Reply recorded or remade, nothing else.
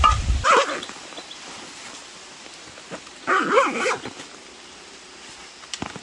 recorded